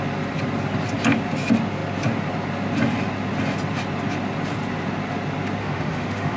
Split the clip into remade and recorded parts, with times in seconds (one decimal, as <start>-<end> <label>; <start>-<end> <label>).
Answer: 0.0-5.6 recorded; 5.6-6.4 remade